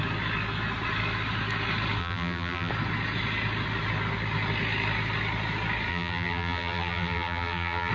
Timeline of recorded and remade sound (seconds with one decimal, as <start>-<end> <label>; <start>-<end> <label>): 0.0-2.0 recorded; 2.0-2.7 remade; 2.7-5.9 recorded; 5.9-7.9 remade